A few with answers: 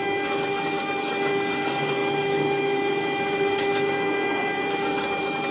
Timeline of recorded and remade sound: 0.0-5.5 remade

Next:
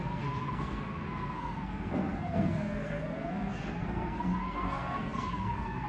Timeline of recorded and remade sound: 0.0-5.9 remade

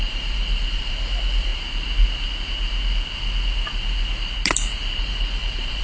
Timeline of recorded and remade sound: 0.0-1.5 remade; 1.5-5.0 recorded; 5.0-5.8 remade

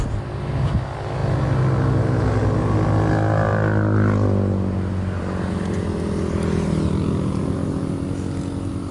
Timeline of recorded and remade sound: 0.0-8.9 recorded

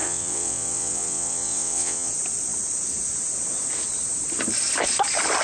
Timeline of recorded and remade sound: 0.0-2.1 remade; 2.1-5.4 recorded

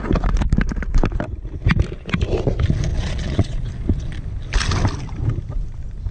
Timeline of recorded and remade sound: 0.0-2.9 recorded; 2.9-3.6 remade; 3.6-6.1 recorded

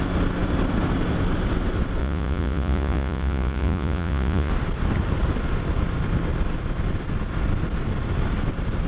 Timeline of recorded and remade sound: 0.0-2.0 recorded; 2.0-4.5 remade; 4.5-8.9 recorded